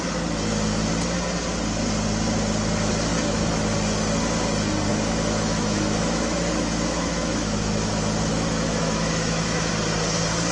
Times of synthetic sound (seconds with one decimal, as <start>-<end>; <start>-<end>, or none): 3.1-3.7; 4.9-7.9; 8.3-9.7